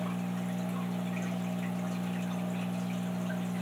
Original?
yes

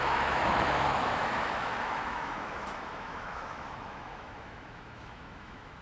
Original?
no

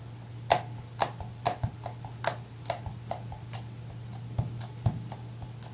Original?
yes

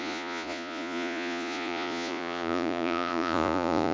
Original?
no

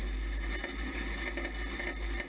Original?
yes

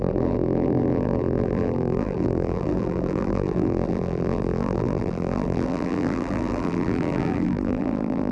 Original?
no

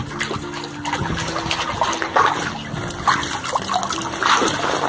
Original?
yes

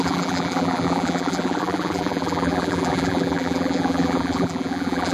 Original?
no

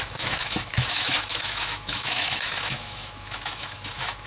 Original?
no